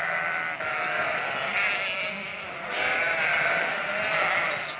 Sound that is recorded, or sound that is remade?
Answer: recorded